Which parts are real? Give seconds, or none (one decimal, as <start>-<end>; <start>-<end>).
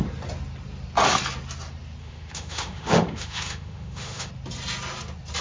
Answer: 0.0-2.0; 4.3-5.4